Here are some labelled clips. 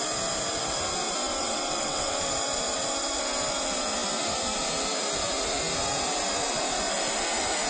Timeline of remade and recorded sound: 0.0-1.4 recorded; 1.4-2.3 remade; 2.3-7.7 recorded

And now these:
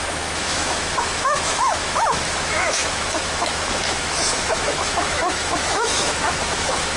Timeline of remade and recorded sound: 0.0-7.0 remade

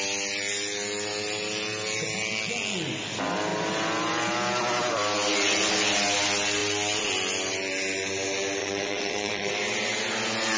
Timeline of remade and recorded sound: 0.0-8.6 recorded; 8.6-9.5 remade; 9.5-10.6 recorded

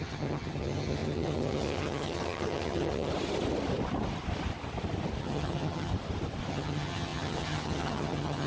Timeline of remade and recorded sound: 0.0-3.1 remade; 3.1-5.2 recorded; 5.2-5.9 remade; 5.9-6.5 recorded; 6.5-8.5 remade

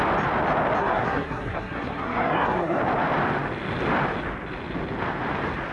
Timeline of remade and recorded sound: 0.0-0.8 recorded; 0.8-2.8 remade; 2.8-5.7 recorded

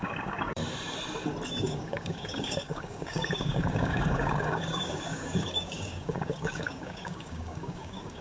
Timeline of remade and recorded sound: 0.0-0.6 remade; 0.6-1.5 recorded; 1.5-8.2 remade

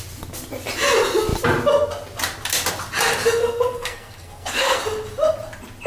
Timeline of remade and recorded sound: 0.0-3.4 recorded; 3.4-4.8 remade; 4.8-5.9 recorded